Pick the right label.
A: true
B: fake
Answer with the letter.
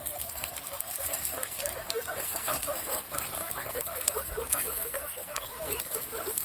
B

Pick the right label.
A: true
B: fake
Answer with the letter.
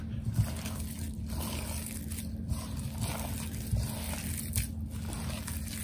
A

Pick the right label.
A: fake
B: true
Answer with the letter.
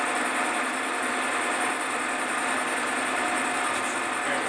B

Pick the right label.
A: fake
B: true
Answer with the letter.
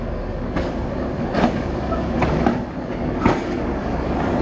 A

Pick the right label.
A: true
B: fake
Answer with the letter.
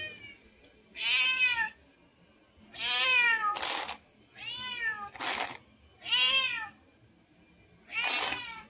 A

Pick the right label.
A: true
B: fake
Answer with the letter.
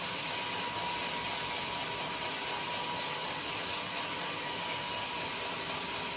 A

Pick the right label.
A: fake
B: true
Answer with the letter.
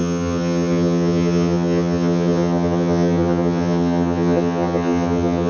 A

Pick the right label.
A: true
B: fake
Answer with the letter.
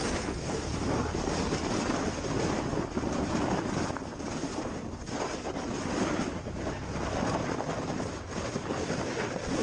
A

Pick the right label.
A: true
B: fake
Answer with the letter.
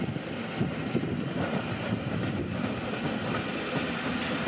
A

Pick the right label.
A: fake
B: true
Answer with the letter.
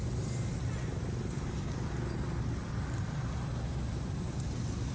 B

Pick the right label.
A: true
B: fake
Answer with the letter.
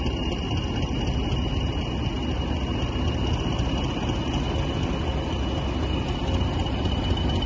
A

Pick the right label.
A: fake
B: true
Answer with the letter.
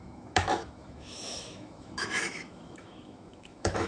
A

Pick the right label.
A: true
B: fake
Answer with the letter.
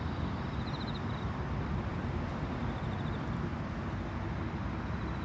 A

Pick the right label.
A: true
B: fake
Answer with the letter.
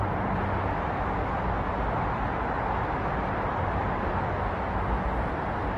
A